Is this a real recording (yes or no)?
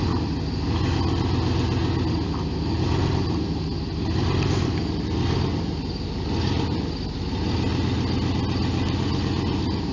yes